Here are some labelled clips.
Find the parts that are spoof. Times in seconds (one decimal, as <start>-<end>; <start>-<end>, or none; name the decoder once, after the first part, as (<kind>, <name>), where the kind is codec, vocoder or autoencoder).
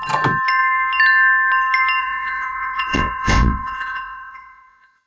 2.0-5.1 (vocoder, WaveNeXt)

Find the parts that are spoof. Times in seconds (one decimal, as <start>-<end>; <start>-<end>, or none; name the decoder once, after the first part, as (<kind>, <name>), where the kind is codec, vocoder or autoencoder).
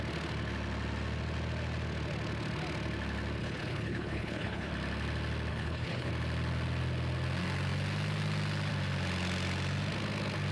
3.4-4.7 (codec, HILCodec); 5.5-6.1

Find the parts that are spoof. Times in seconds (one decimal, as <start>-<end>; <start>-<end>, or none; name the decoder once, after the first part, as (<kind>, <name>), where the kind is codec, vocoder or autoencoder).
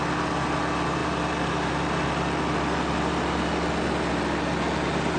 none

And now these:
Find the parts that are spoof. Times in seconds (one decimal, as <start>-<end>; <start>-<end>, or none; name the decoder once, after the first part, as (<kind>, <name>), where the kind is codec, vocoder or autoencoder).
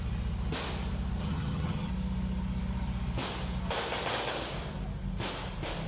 1.2-1.9 (vocoder, HiFi-GAN)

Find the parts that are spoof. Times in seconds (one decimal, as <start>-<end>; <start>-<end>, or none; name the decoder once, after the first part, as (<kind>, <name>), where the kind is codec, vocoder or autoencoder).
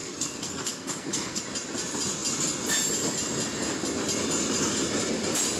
0.0-1.4 (codec, SNAC)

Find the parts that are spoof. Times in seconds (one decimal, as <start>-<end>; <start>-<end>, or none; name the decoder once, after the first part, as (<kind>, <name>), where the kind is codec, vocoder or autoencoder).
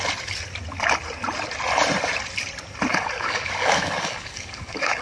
2.9-5.0 (codec, DAC)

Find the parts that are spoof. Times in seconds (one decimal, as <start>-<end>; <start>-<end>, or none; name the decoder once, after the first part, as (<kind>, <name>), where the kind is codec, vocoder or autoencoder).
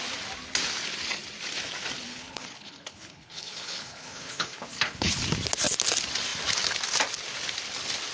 2.1-5.2 (codec, HILCodec)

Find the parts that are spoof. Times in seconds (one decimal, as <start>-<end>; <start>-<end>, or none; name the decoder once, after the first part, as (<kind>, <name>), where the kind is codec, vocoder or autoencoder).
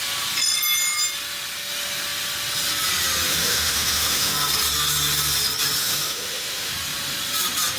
3.3-4.3 (autoencoder, DAC-VAE); 5.8-6.7